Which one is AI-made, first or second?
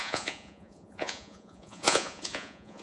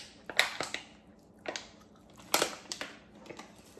first